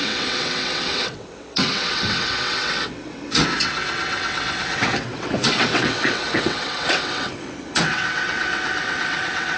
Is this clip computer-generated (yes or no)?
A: yes